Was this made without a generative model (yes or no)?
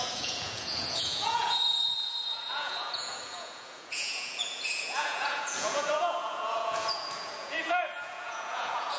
no